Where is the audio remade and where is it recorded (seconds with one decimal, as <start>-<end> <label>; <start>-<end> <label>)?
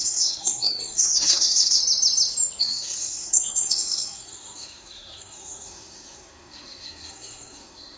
0.0-1.8 remade; 1.8-2.6 recorded; 2.6-8.0 remade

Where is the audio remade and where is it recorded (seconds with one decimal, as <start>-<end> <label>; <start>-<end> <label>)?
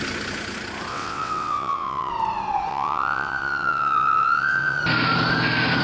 0.0-0.9 recorded; 0.9-2.1 remade; 2.1-2.7 recorded; 2.7-4.8 remade; 4.8-5.8 recorded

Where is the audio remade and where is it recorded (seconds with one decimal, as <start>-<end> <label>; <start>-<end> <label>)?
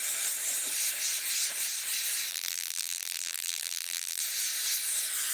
0.0-2.3 recorded; 2.3-4.2 remade; 4.2-5.3 recorded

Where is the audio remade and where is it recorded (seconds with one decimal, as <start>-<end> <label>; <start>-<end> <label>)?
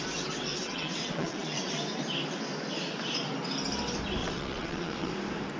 0.0-0.5 recorded; 0.5-1.7 remade; 1.7-4.2 recorded; 4.2-5.1 remade; 5.1-5.6 recorded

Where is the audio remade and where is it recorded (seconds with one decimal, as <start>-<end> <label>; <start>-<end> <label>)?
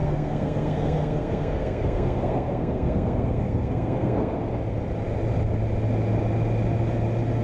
0.0-4.4 remade; 4.4-7.4 recorded